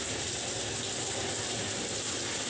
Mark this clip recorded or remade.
recorded